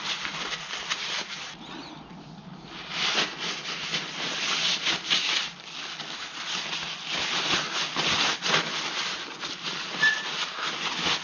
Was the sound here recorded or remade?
recorded